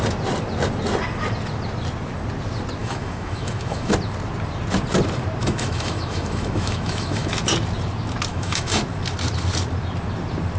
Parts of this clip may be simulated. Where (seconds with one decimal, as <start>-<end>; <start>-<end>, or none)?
2.8-3.9; 5.4-7.3; 8.3-8.8